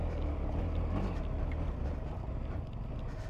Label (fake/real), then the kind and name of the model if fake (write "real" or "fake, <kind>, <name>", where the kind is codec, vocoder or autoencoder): real